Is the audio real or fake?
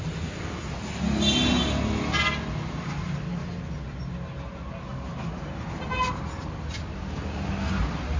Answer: real